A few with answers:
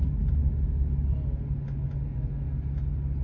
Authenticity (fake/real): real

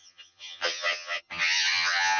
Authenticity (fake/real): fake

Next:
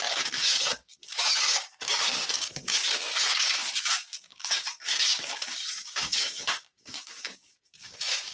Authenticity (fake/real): fake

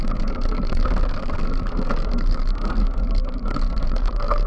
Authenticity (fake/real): fake